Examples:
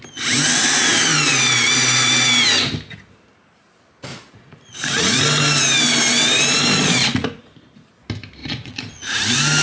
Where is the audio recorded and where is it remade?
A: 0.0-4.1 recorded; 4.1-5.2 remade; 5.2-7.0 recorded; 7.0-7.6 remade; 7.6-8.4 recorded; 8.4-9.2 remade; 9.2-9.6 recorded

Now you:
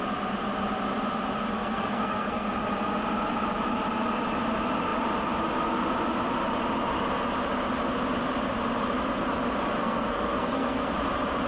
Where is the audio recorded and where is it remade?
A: 0.0-1.6 recorded; 1.6-2.5 remade; 2.5-9.8 recorded; 9.8-10.9 remade; 10.9-11.5 recorded

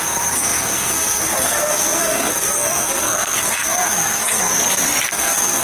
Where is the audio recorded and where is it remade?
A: 0.0-4.5 remade; 4.5-5.1 recorded; 5.1-5.6 remade

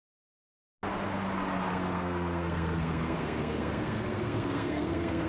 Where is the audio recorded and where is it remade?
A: 0.0-1.7 recorded; 1.7-5.3 remade

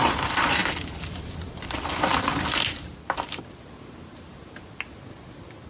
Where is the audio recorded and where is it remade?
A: 0.0-5.7 recorded